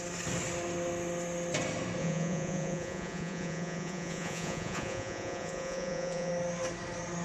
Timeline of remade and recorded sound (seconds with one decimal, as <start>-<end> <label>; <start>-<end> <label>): 0.0-2.0 recorded; 2.0-6.3 remade; 6.3-7.2 recorded